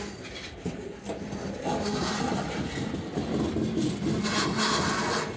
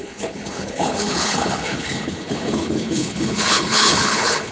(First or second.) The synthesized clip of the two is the second